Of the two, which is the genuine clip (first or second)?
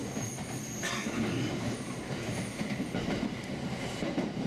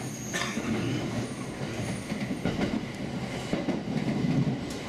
second